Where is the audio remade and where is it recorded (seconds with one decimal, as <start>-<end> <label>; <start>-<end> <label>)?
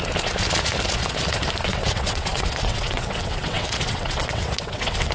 0.0-1.7 recorded; 1.7-5.1 remade